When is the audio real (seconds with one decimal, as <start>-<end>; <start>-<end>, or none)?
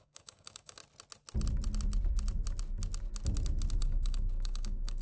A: 0.8-3.8